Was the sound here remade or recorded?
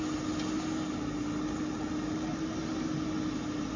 recorded